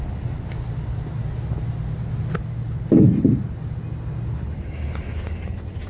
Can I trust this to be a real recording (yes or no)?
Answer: yes